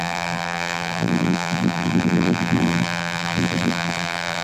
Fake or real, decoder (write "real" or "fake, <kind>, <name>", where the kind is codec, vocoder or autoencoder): fake, vocoder, BigVGAN v2